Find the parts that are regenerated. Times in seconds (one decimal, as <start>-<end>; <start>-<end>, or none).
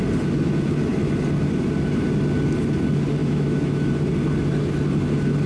3.2-3.9